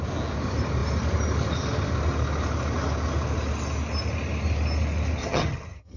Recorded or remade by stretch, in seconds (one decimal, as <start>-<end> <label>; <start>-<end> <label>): 0.0-5.2 recorded; 5.2-6.0 remade

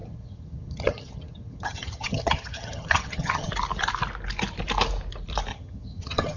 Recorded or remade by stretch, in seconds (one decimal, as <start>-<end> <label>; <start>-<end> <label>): 0.0-3.5 remade; 3.5-5.5 recorded; 5.5-6.4 remade

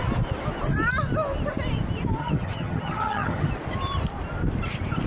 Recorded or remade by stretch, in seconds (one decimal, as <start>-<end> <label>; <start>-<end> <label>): 0.0-2.2 recorded; 2.2-3.5 remade; 3.5-5.1 recorded

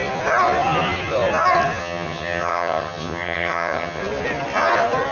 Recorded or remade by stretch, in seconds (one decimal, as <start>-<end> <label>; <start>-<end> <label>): 0.0-1.8 recorded; 1.8-4.0 remade; 4.0-5.1 recorded

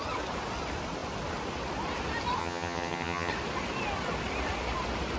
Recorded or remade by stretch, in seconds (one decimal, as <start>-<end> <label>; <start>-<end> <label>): 0.0-2.4 recorded; 2.4-3.3 remade; 3.3-5.2 recorded